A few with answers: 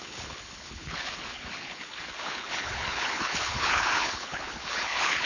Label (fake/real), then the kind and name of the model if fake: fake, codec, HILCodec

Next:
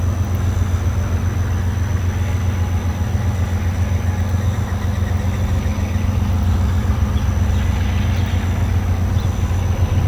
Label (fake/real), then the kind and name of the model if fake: real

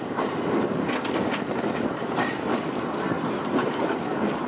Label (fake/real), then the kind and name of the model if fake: real